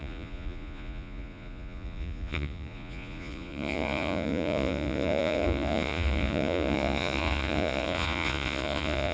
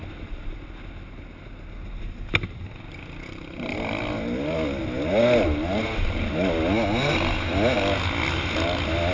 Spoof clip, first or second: first